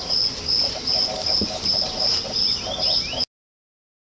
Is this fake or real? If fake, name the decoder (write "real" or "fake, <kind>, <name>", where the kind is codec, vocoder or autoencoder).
real